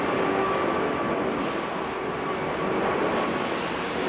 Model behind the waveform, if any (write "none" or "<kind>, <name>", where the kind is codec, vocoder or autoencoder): none